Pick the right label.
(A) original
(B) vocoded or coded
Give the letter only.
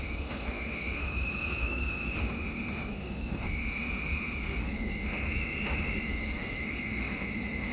B